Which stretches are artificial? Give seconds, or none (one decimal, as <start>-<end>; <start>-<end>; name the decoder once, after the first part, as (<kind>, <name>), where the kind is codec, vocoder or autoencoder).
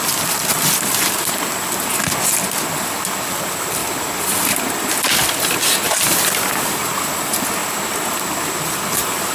none